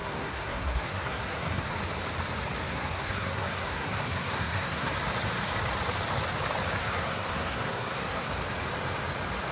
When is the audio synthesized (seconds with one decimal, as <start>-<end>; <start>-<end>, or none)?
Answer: 0.0-1.6; 2.7-4.9; 6.8-8.3